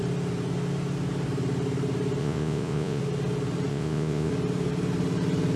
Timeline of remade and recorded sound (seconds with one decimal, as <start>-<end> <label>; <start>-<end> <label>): 0.0-2.2 recorded; 2.2-3.0 remade; 3.0-3.7 recorded; 3.7-4.3 remade; 4.3-5.6 recorded